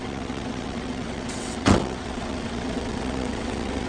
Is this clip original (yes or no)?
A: no